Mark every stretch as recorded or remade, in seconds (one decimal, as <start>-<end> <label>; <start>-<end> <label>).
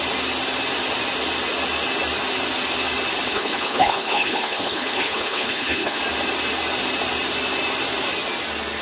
0.0-3.3 recorded; 3.3-6.0 remade; 6.0-8.8 recorded